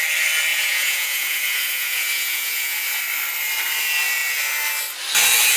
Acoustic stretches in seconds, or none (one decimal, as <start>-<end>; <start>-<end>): 0.0-0.5; 3.0-5.6